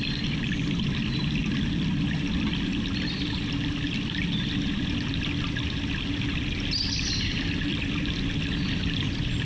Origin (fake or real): real